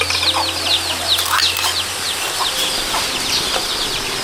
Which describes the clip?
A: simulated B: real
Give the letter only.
B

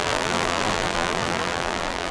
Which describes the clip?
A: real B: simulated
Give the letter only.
B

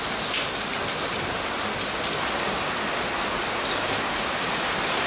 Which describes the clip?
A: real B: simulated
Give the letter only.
A